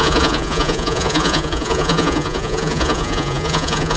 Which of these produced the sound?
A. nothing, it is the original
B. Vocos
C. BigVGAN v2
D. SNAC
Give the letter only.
B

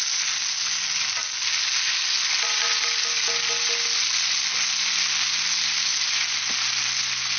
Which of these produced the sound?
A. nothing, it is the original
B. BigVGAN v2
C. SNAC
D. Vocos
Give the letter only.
A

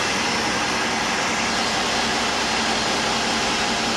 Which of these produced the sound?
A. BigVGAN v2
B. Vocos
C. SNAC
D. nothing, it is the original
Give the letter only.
D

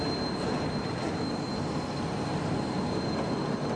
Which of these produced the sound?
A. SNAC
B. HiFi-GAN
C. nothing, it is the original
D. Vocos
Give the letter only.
C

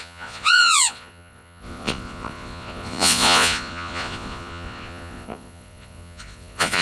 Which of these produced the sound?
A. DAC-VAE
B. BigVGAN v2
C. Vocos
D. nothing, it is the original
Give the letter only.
C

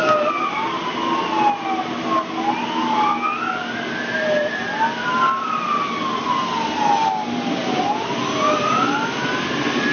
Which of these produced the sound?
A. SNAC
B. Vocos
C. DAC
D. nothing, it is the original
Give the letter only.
D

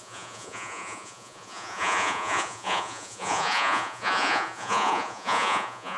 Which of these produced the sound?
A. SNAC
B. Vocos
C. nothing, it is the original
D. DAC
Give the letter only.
B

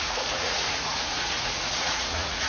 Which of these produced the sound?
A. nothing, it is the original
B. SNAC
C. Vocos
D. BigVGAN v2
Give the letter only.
C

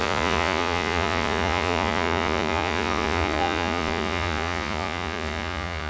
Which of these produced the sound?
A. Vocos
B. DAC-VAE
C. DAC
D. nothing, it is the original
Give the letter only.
A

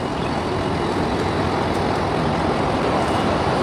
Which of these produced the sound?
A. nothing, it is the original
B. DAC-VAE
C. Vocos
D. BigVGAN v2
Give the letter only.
A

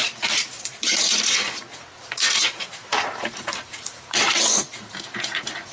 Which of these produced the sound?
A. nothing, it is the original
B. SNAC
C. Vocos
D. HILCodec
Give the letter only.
C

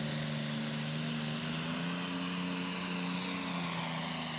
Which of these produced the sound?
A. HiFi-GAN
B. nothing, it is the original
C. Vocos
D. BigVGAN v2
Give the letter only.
B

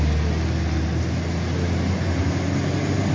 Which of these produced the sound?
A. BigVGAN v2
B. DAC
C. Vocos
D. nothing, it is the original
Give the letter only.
D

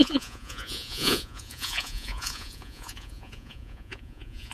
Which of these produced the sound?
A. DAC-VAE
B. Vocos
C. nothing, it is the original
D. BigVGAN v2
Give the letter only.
B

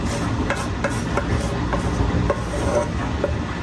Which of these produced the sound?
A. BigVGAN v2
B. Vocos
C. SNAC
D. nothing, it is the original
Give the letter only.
D